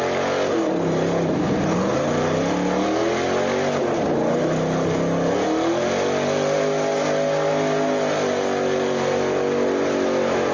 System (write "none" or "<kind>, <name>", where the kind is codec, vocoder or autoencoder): none